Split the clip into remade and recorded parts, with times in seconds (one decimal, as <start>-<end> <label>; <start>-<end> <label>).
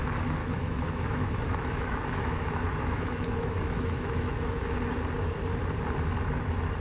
0.0-0.4 recorded; 0.4-4.5 remade; 4.5-6.8 recorded